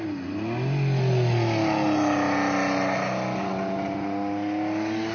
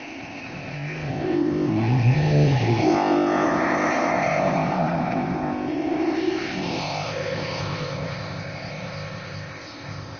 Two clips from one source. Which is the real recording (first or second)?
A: first